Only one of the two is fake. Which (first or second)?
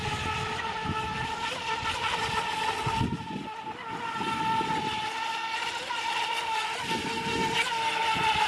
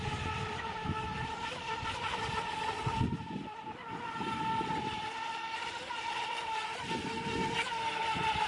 second